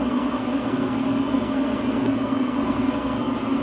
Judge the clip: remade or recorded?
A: remade